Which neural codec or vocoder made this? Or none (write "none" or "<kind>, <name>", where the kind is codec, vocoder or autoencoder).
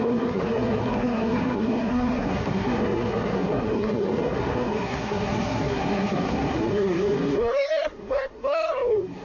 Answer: codec, SNAC